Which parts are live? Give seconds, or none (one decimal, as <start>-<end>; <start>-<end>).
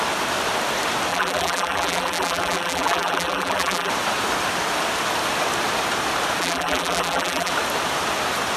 0.0-1.1; 3.9-6.4; 7.5-8.6